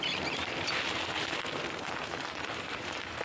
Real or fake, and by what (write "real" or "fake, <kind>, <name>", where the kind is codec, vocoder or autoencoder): fake, vocoder, BigVGAN v2